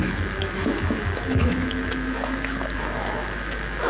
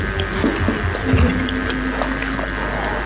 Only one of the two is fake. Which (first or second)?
first